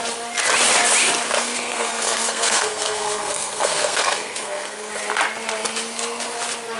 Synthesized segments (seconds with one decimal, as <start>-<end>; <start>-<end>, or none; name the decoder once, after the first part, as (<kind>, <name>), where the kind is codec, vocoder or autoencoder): 1.4-4.9 (codec, SNAC)